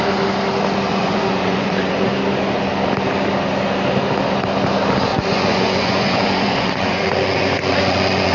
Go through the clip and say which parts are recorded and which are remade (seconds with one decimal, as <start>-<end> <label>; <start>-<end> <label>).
0.0-0.9 recorded; 0.9-2.1 remade; 2.1-5.1 recorded; 5.1-8.3 remade